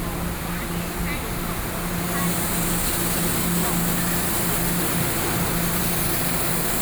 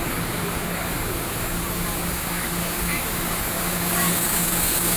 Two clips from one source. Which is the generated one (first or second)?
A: second